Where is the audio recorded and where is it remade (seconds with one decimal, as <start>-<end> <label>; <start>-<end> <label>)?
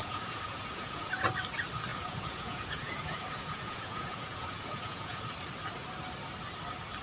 0.0-1.1 remade; 1.1-1.9 recorded; 1.9-5.2 remade; 5.2-7.0 recorded